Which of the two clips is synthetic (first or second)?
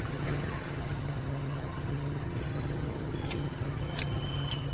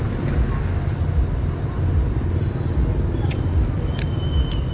first